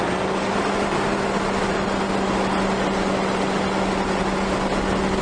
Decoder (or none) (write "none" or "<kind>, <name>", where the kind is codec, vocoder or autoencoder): none